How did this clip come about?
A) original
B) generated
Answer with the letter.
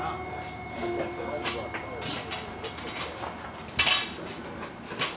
A